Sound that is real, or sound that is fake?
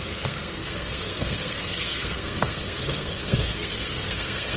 fake